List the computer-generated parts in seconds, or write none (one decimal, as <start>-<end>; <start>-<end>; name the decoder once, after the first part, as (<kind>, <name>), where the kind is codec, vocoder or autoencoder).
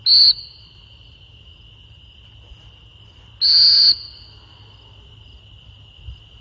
none